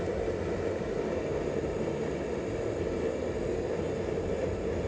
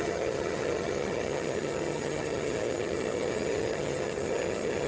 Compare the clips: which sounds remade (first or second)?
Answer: second